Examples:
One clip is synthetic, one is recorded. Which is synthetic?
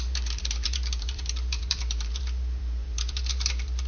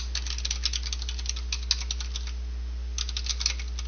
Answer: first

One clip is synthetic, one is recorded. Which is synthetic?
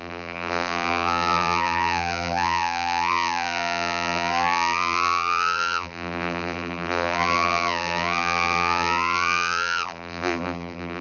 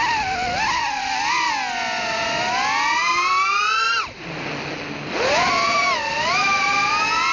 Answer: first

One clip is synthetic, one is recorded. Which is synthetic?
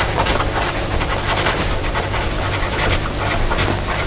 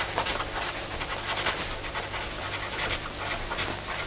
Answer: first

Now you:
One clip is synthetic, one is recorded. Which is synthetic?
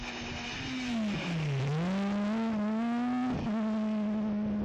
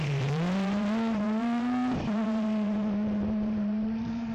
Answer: second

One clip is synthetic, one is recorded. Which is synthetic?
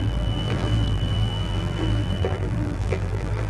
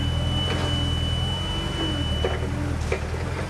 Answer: first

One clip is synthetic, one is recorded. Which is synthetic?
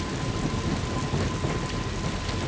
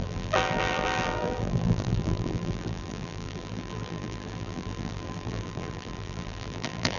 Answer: second